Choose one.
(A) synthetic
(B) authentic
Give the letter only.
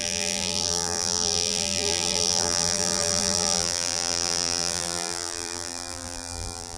A